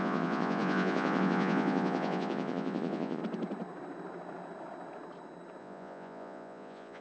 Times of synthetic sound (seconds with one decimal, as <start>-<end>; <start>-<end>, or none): 0.0-3.2; 5.6-7.0